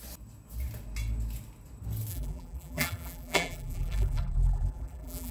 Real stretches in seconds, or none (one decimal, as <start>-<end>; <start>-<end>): 0.0-2.1